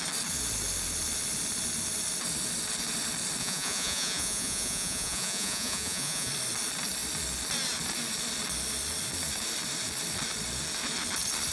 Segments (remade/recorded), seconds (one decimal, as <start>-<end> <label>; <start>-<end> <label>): 0.0-3.4 recorded; 3.4-6.3 remade; 6.3-11.5 recorded